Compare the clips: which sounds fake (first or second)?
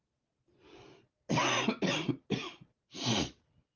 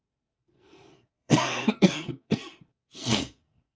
second